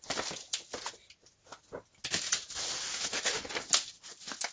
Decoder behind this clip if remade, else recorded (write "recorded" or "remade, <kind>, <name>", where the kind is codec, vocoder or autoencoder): recorded